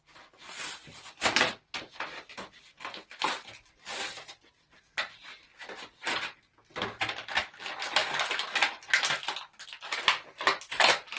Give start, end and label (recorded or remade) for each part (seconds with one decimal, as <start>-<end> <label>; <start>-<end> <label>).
0.0-11.2 recorded